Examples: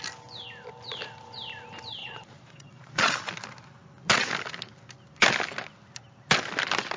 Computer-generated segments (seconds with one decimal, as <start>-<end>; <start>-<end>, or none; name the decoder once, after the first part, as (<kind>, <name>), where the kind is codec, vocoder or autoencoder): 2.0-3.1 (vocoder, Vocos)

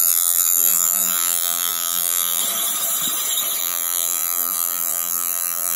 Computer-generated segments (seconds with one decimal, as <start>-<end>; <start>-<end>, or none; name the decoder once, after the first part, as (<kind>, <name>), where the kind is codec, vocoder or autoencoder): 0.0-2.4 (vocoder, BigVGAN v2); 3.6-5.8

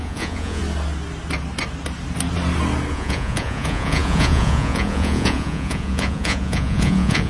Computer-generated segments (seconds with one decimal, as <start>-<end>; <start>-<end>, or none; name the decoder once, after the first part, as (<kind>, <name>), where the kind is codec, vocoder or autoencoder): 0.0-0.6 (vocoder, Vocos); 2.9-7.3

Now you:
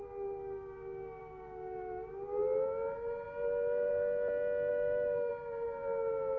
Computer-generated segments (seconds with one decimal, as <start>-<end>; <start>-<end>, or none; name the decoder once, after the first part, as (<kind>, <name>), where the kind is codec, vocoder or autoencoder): 4.7-5.3 (autoencoder, DAC-VAE)

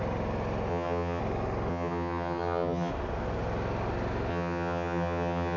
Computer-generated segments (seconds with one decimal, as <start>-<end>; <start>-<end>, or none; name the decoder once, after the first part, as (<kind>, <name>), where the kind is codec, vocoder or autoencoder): 0.7-1.2 (vocoder, HiFi-GAN); 1.7-2.9; 4.3-5.6